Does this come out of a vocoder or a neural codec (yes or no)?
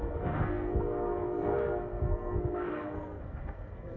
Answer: yes